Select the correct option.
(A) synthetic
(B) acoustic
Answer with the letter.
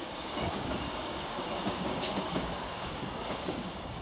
A